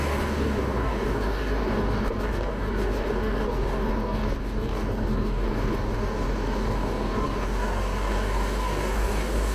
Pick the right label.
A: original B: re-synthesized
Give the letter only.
B